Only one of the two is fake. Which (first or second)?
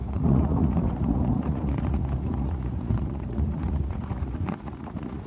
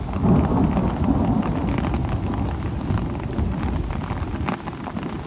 first